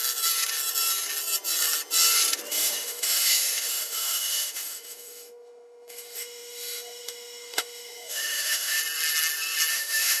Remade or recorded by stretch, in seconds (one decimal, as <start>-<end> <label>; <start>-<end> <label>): 0.0-2.5 recorded; 2.5-8.8 remade; 8.8-9.7 recorded; 9.7-10.2 remade